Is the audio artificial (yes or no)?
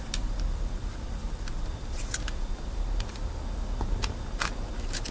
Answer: no